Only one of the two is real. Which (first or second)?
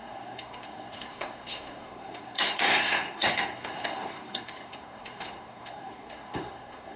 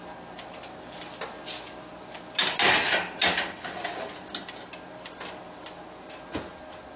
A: second